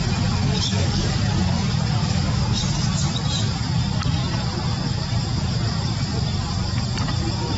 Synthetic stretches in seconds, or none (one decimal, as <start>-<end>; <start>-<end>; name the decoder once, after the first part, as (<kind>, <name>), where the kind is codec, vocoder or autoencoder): 0.4-1.2 (codec, DAC); 2.0-2.6